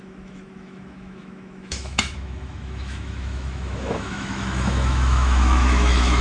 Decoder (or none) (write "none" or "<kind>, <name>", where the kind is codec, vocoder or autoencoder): autoencoder, DAC-VAE